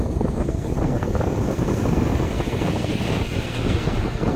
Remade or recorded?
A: remade